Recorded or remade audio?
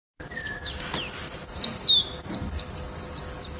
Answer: recorded